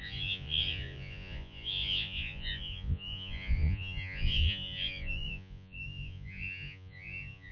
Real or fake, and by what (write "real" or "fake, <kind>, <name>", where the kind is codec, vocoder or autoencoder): fake, vocoder, Vocos